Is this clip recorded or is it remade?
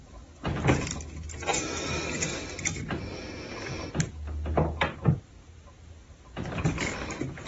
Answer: recorded